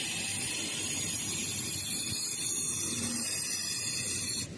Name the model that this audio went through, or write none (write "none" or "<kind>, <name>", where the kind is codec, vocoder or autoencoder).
none